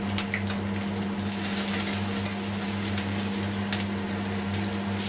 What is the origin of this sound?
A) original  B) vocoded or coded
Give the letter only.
A